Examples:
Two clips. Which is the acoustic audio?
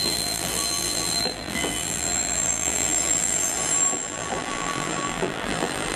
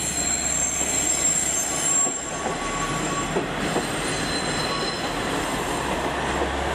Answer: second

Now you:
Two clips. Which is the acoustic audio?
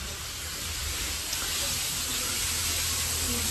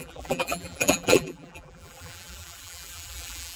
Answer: first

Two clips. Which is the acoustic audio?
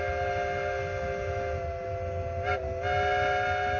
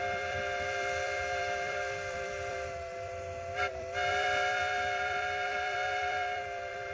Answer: first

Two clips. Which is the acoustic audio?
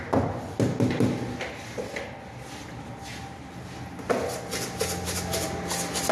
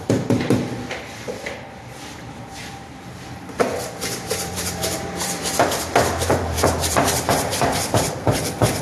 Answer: first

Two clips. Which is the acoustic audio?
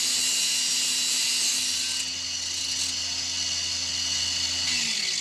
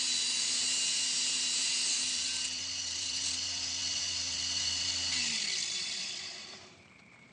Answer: first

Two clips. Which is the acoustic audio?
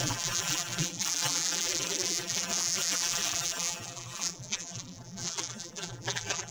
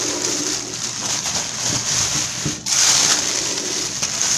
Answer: second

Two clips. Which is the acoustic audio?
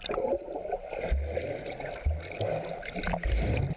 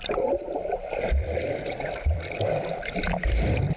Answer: first